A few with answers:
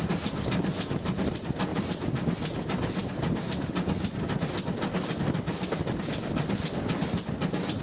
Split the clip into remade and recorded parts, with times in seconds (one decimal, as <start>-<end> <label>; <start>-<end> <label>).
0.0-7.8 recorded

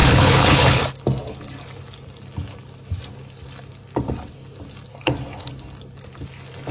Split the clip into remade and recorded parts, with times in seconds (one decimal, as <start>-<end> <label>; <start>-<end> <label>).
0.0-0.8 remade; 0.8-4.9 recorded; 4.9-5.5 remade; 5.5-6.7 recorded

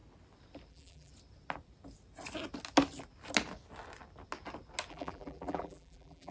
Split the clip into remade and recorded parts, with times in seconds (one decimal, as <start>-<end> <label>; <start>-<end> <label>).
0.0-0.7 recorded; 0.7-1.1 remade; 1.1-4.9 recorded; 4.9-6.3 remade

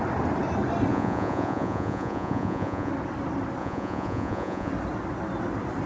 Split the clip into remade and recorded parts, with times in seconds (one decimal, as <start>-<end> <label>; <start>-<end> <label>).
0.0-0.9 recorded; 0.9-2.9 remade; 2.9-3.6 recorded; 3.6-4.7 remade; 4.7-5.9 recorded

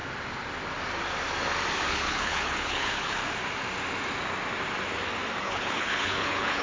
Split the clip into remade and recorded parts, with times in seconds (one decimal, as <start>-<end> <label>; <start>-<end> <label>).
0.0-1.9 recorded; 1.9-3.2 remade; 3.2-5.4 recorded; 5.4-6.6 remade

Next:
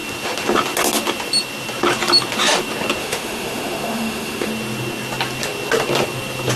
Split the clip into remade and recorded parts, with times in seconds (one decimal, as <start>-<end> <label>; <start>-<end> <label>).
0.0-3.0 recorded; 3.0-4.5 remade; 4.5-6.6 recorded

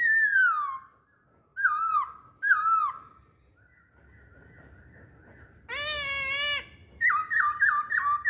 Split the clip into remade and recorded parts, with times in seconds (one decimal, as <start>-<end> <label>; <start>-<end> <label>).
0.0-6.8 recorded; 6.8-7.6 remade; 7.6-8.3 recorded